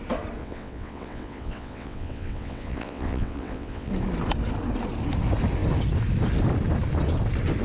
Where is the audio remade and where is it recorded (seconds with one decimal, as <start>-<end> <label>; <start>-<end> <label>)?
0.0-0.4 recorded; 0.4-3.9 remade; 3.9-7.6 recorded